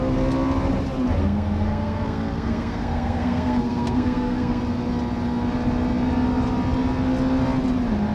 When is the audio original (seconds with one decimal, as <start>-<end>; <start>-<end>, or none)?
0.0-1.2; 4.6-8.1